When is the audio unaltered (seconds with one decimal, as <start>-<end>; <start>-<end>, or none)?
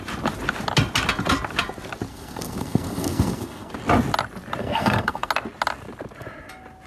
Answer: 0.0-2.1; 3.7-4.6; 5.3-6.9